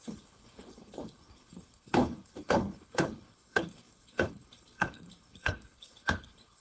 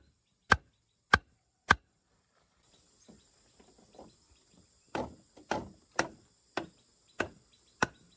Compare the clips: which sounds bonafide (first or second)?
second